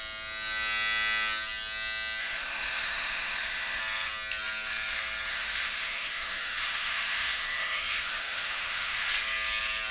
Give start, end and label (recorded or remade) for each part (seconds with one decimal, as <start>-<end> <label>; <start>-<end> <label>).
0.0-2.2 recorded; 2.2-3.8 remade; 3.8-5.3 recorded; 5.3-9.1 remade; 9.1-9.9 recorded